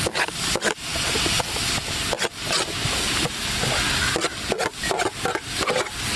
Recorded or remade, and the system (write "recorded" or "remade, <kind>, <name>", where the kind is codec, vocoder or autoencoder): recorded